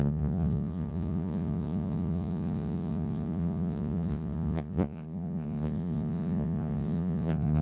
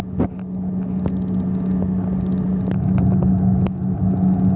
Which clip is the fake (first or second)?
first